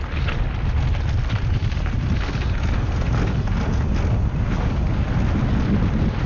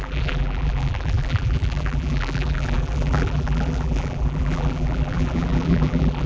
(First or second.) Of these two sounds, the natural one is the first